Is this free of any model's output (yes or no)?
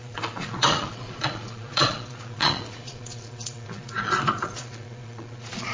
no